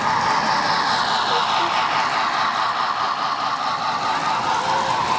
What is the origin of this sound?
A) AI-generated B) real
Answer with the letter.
B